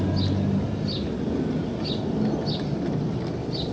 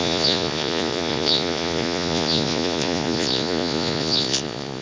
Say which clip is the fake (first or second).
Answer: second